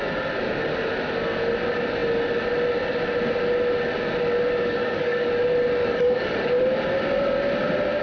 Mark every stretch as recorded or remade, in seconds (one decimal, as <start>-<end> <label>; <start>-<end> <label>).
0.0-4.6 recorded; 4.6-5.3 remade; 5.3-5.8 recorded; 5.8-6.5 remade; 6.5-8.0 recorded